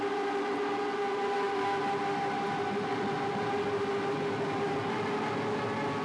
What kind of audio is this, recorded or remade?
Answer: recorded